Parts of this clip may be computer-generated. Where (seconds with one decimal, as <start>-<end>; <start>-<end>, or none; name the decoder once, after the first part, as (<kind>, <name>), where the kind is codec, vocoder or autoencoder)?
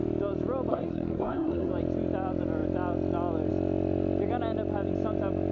0.7-1.7 (codec, SNAC)